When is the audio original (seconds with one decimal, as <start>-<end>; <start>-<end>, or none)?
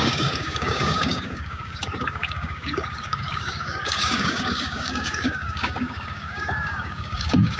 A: none